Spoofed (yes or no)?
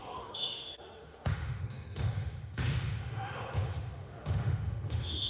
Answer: yes